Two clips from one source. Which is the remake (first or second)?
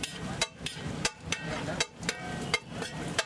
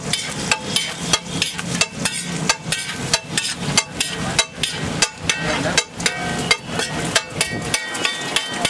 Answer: first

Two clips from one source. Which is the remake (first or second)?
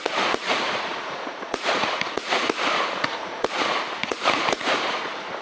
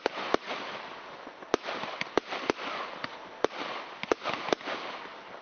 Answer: first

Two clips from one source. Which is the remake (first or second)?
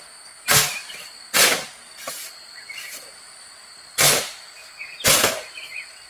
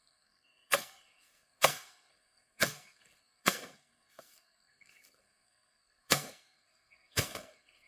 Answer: second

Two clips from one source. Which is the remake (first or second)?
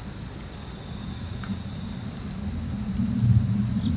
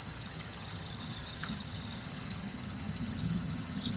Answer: second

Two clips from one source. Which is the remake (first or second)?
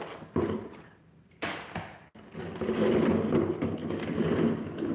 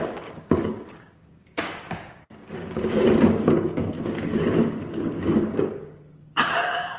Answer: second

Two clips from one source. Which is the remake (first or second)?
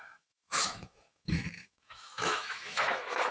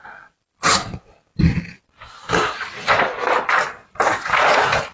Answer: first